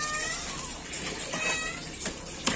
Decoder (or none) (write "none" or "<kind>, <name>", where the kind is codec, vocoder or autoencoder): none